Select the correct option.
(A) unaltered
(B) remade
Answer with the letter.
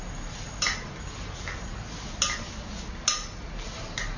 A